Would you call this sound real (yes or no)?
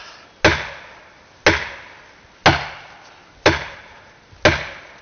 yes